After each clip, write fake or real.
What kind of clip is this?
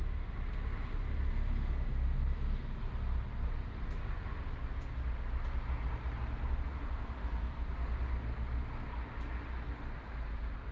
real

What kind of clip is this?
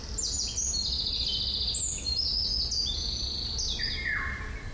real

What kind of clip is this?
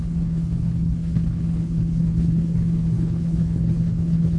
fake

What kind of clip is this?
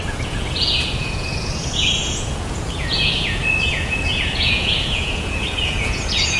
fake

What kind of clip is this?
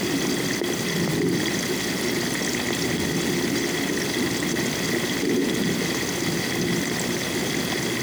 real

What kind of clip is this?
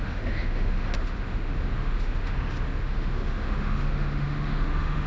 fake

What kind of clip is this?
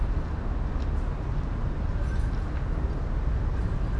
real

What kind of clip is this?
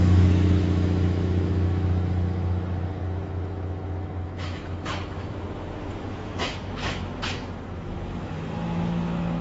fake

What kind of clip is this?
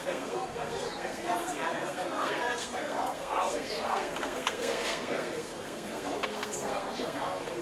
fake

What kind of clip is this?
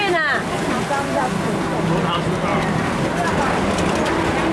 real